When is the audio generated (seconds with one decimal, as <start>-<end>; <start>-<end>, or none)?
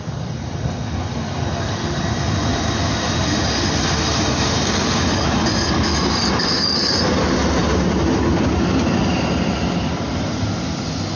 none